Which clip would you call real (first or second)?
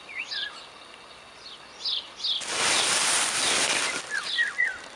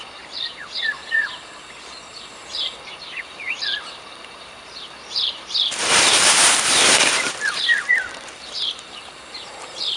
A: first